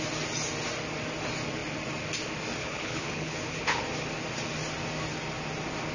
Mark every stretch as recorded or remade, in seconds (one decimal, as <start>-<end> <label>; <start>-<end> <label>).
0.0-2.6 recorded; 2.6-3.8 remade; 3.8-5.9 recorded